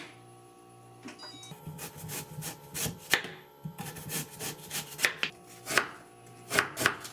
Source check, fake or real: real